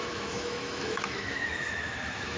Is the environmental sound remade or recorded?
remade